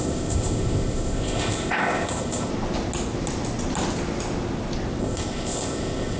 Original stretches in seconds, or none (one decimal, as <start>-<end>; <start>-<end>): 2.5-5.0